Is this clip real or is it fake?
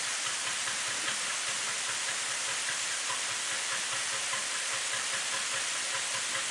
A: real